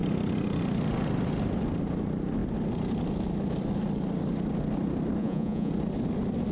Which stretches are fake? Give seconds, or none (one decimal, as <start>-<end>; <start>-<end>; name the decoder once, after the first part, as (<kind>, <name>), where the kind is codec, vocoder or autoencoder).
5.2-5.7 (vocoder, Vocos)